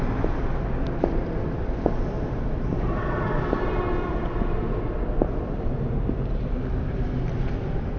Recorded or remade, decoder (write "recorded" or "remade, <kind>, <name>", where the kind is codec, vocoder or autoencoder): recorded